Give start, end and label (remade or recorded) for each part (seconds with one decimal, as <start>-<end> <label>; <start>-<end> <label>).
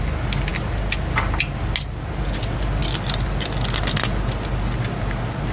0.0-5.5 recorded